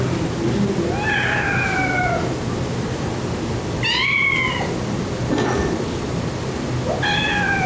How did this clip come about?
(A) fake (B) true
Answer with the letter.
B